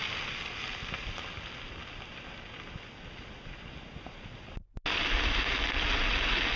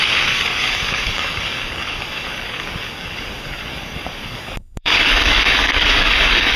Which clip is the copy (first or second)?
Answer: second